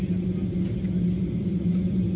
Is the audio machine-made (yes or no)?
no